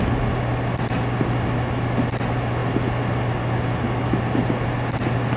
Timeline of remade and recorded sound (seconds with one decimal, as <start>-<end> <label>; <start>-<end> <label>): 0.0-5.4 recorded